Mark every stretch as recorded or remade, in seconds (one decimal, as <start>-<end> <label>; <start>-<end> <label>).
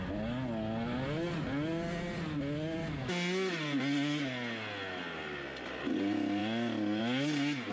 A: 0.0-7.7 recorded